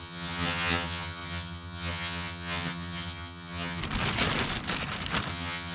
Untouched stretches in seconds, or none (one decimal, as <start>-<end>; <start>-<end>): 3.8-5.3